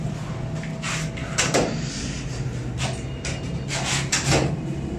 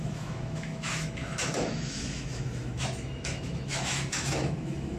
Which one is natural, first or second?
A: first